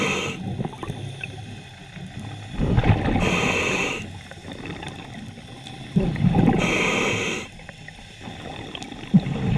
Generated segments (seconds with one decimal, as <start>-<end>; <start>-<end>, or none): none